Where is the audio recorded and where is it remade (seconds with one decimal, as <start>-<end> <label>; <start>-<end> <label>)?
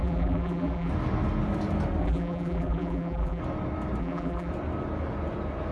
0.0-0.9 remade; 0.9-2.0 recorded; 2.0-3.4 remade; 3.4-4.0 recorded; 4.0-4.5 remade; 4.5-5.7 recorded